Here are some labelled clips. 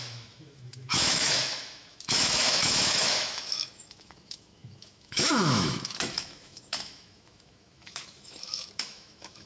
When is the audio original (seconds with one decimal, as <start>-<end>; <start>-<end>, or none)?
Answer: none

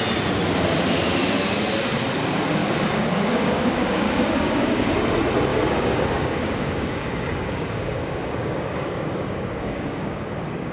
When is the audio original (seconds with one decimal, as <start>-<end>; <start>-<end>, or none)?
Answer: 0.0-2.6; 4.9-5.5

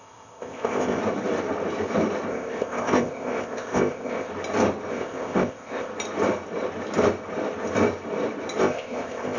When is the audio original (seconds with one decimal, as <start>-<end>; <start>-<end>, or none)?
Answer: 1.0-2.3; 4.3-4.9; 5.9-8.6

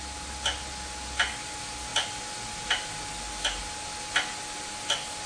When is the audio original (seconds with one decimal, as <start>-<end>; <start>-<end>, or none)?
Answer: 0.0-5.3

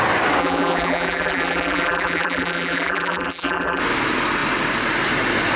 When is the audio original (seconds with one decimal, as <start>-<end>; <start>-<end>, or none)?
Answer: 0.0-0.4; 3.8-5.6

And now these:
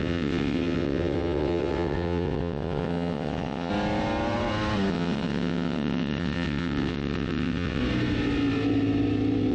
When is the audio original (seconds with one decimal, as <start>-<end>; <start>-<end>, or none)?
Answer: 3.7-4.9; 7.8-9.5

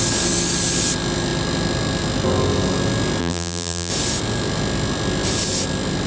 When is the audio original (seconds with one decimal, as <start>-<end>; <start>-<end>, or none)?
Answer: 0.0-3.2; 3.9-6.1